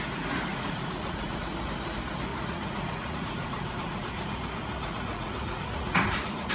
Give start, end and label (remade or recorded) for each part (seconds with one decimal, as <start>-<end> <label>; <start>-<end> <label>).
0.0-0.5 recorded; 0.5-1.4 remade; 1.4-2.3 recorded; 2.3-6.5 remade